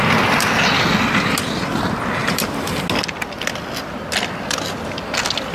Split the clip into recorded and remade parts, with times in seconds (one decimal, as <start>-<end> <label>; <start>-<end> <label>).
0.0-2.2 recorded; 2.2-2.7 remade; 2.7-5.5 recorded